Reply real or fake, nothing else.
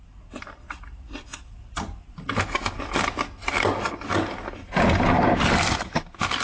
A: real